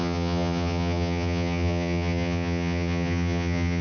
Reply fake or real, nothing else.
fake